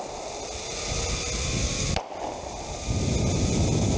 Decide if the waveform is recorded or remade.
recorded